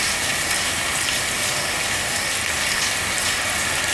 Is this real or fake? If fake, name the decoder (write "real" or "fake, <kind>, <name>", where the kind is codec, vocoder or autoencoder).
real